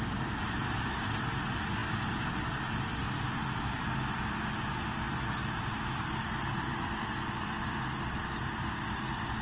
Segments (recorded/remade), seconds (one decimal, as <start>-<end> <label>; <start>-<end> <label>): 0.0-9.4 recorded